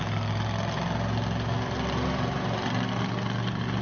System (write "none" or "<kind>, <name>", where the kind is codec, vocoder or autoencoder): none